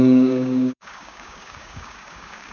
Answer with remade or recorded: remade